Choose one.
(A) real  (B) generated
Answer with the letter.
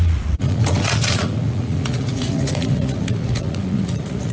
B